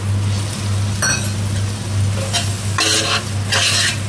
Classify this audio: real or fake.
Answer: real